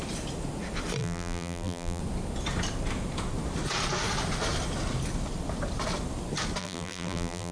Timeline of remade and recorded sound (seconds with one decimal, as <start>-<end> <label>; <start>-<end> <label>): 0.0-1.0 recorded; 1.0-2.0 remade; 2.0-6.6 recorded; 6.6-7.5 remade